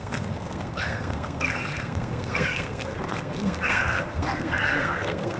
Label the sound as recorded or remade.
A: remade